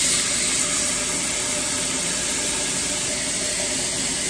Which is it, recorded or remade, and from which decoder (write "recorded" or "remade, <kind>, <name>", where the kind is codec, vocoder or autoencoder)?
recorded